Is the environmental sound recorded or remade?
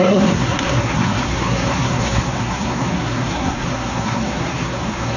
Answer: remade